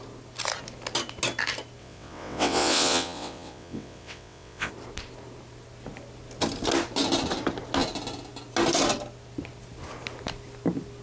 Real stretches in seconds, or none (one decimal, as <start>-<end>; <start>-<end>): 0.0-1.8; 4.7-11.0